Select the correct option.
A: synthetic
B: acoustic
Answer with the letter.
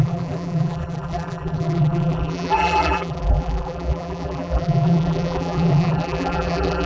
A